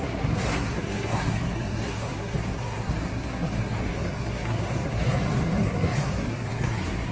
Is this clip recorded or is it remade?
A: remade